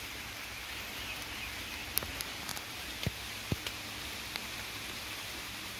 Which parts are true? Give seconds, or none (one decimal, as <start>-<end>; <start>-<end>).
none